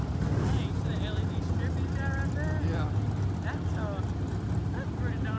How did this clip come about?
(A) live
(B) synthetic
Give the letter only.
A